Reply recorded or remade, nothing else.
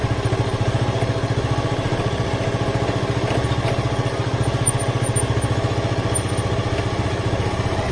recorded